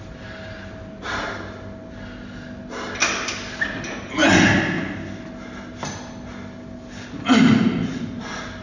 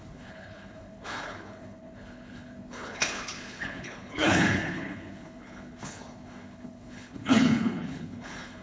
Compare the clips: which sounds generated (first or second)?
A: second